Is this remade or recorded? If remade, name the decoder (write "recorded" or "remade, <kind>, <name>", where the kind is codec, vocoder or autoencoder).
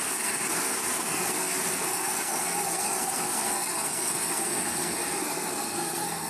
remade, codec, SNAC